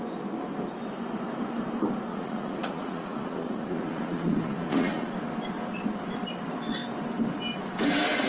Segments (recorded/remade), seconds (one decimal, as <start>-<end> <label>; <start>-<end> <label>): 0.0-2.1 recorded; 2.1-5.1 remade; 5.1-8.3 recorded